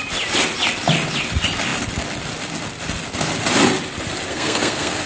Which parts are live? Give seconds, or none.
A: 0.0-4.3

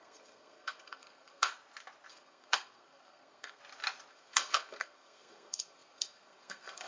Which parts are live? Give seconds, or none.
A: 1.5-2.1; 3.6-4.1

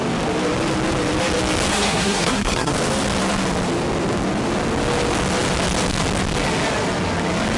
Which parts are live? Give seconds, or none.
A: 0.0-1.7; 2.7-7.6

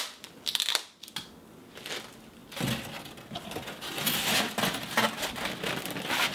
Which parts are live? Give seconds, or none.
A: 0.0-6.3

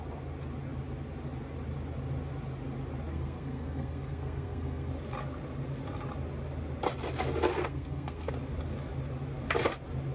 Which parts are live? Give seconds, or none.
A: 0.0-3.1; 4.9-7.5; 8.3-10.1

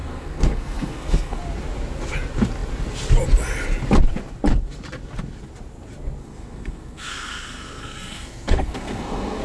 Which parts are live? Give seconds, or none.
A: 1.4-6.2

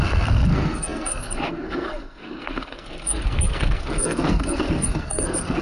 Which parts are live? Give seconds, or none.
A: none